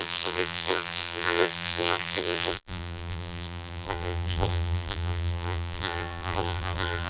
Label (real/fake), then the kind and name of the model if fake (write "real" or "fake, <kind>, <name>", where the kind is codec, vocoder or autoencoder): fake, vocoder, BigVGAN v2